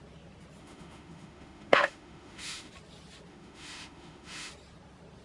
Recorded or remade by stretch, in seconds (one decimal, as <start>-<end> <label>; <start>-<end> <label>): 0.0-0.6 recorded; 0.6-2.7 remade; 2.7-3.3 recorded; 3.3-4.5 remade; 4.5-5.2 recorded